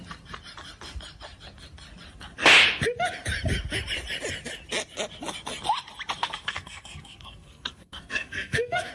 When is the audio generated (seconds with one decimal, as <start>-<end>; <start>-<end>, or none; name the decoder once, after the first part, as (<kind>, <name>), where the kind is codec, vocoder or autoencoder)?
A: 6.2-8.9 (codec, SNAC)

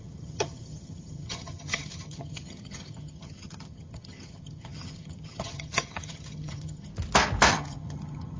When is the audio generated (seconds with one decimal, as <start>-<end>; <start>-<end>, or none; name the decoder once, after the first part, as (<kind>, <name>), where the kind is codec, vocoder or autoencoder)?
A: 0.0-6.9 (vocoder, HiFi-GAN); 7.5-8.4

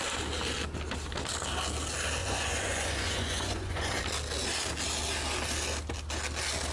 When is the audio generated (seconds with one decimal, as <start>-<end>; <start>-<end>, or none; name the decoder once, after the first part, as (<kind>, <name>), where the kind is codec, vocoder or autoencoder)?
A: 2.2-4.0 (vocoder, Vocos)

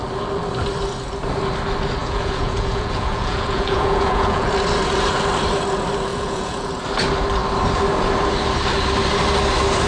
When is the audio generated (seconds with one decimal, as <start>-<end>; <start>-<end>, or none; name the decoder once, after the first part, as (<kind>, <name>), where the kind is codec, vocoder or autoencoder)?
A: 2.0-4.5 (vocoder, Vocos); 6.1-6.7

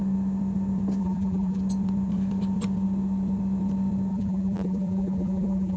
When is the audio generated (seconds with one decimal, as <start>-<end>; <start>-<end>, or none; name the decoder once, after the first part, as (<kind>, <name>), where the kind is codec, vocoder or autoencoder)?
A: 1.0-1.6 (vocoder, BigVGAN v2); 4.1-5.8

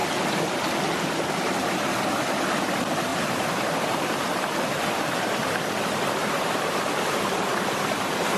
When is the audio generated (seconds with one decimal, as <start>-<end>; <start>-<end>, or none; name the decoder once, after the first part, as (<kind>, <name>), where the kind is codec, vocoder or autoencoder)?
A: 3.1-4.2 (vocoder, BigVGAN v2); 6.2-6.8

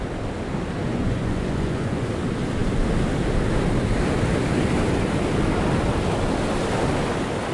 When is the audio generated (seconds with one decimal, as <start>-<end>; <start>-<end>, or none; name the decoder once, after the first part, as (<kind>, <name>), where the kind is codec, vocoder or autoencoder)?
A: 0.9-2.1 (vocoder, Vocos)